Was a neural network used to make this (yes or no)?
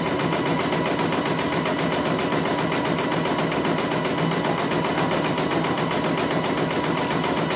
no